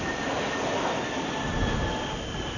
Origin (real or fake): real